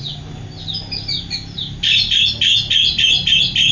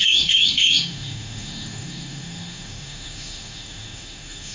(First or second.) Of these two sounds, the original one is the first